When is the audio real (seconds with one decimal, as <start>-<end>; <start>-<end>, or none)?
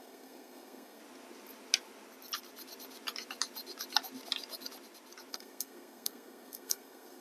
1.0-5.3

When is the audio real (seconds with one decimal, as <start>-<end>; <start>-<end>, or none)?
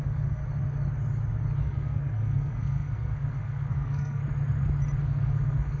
0.4-1.6; 4.2-5.0